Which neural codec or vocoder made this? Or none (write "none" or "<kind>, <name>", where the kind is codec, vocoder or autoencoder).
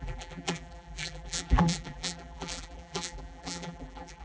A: vocoder, BigVGAN v2